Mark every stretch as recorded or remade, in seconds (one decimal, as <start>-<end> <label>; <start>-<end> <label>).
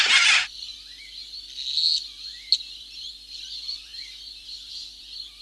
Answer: 0.0-0.7 remade; 0.7-2.8 recorded; 2.8-5.4 remade